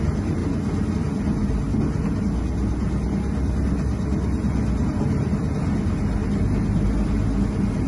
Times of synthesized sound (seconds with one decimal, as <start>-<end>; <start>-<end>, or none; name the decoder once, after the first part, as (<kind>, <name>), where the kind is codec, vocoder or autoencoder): none